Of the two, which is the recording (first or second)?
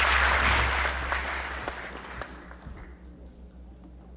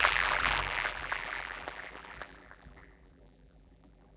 first